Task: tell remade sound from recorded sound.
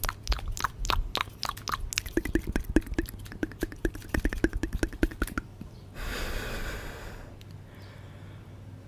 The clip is recorded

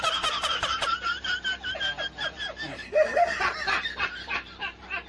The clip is remade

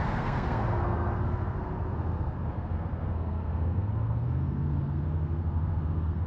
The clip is remade